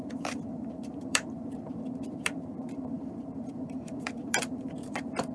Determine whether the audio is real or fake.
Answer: fake